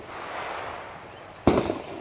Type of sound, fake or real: real